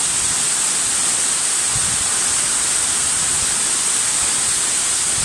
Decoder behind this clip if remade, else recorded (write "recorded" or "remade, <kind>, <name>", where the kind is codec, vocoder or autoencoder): recorded